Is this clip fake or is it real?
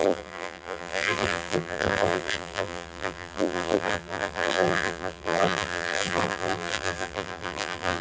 fake